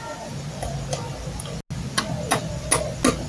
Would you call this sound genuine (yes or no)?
yes